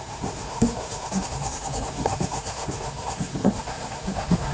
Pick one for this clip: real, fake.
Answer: fake